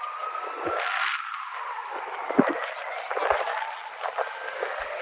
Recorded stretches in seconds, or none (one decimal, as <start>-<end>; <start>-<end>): 0.0-5.0